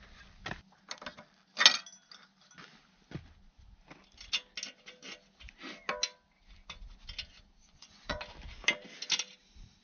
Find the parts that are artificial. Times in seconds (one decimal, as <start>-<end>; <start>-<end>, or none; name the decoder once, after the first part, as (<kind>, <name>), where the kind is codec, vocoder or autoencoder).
7.6-8.2 (vocoder, Vocos)